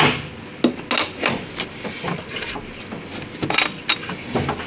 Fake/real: real